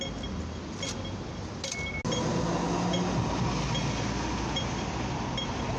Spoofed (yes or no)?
no